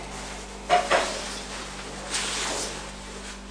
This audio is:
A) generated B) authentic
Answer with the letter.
B